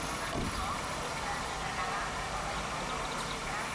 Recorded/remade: recorded